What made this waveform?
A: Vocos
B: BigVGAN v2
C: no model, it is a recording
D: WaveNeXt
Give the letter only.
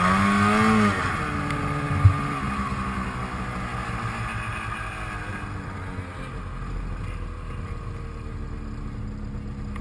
C